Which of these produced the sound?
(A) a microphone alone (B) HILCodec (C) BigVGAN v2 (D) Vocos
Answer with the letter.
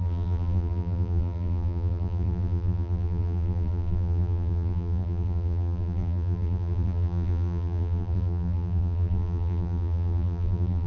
C